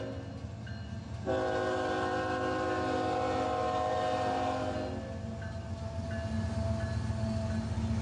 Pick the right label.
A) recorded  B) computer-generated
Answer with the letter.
A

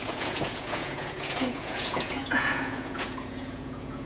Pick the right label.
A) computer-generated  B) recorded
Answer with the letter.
A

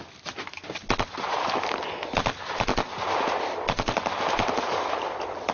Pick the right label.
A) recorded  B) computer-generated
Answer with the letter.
A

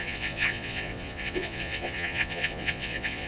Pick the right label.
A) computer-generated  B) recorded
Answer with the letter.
A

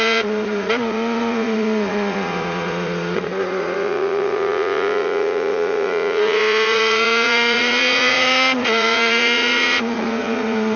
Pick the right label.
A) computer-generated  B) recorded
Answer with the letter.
A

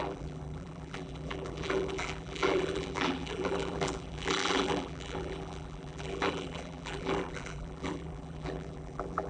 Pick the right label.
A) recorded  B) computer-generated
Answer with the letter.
B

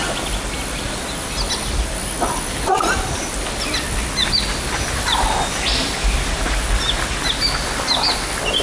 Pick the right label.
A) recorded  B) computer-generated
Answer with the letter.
A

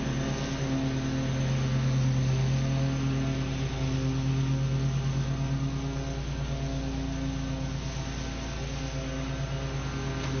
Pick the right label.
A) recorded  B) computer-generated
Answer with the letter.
A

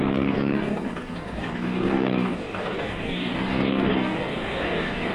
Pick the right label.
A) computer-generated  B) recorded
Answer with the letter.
A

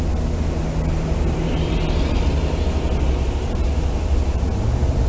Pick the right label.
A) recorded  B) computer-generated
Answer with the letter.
A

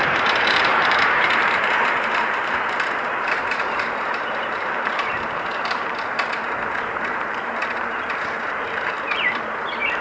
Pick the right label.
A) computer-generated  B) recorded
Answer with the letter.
A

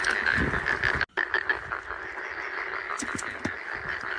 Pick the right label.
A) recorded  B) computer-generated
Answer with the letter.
A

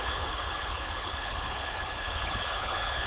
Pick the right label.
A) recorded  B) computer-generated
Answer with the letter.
B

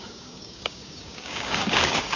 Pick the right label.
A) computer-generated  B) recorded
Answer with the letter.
A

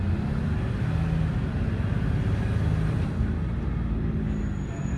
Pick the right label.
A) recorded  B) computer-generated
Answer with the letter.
A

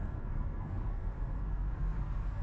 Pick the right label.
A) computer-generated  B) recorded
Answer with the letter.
A